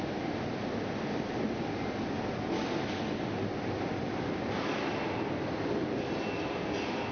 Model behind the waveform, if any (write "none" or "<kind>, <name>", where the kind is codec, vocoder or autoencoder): none